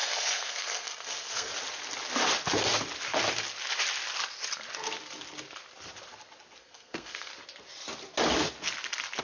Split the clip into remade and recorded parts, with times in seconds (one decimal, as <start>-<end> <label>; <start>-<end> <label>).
0.0-1.5 remade; 1.5-6.6 recorded; 6.6-7.3 remade; 7.3-9.2 recorded